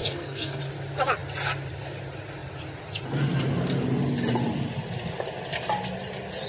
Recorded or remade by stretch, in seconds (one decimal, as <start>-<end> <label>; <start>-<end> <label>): 0.0-0.6 remade; 0.6-6.5 recorded